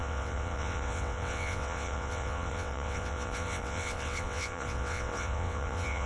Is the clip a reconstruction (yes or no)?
yes